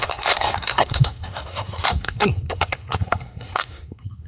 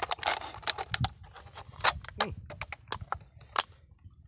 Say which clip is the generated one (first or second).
first